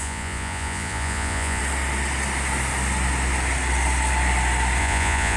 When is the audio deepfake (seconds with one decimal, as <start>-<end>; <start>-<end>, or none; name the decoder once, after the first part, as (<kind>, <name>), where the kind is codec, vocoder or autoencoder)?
0.0-1.6 (vocoder, Vocos); 4.8-5.4